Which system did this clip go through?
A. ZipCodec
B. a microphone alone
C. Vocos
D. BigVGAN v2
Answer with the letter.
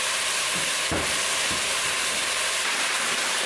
D